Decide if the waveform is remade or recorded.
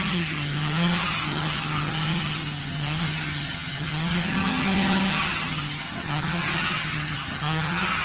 remade